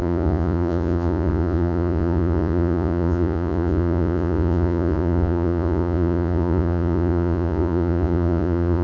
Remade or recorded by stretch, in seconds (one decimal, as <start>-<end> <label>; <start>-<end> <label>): 0.0-8.8 remade